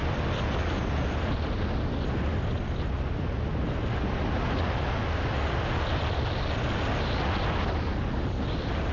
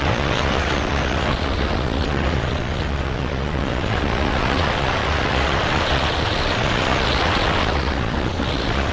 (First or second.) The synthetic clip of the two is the second